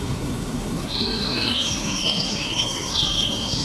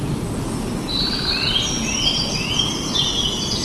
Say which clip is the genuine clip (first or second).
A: second